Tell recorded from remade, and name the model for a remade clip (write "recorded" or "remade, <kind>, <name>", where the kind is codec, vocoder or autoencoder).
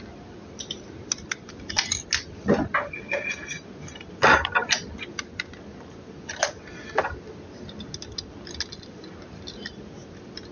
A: recorded